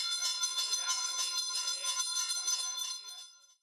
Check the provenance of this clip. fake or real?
fake